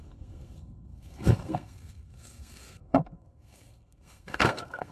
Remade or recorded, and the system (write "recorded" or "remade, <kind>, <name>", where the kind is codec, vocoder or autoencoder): remade, codec, SNAC